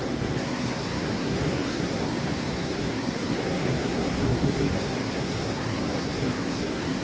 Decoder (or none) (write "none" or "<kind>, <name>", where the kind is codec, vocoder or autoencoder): codec, SNAC